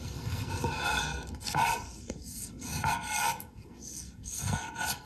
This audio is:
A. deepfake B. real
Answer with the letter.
A